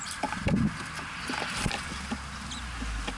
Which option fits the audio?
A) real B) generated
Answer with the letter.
A